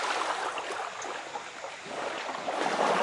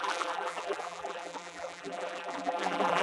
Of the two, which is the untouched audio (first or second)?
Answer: first